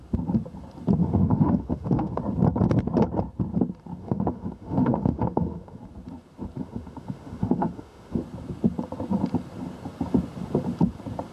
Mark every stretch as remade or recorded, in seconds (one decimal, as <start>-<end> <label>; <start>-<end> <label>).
0.0-1.0 recorded; 1.0-2.2 remade; 2.2-4.0 recorded; 4.0-5.8 remade; 5.8-6.6 recorded; 6.6-8.2 remade; 8.2-11.3 recorded